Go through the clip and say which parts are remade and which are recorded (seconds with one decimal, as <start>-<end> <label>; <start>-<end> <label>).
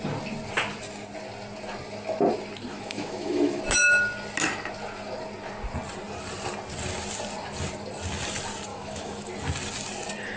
0.0-2.7 recorded; 2.7-3.6 remade; 3.6-8.7 recorded; 8.7-9.3 remade; 9.3-10.4 recorded